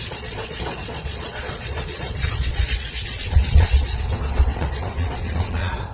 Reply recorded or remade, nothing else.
remade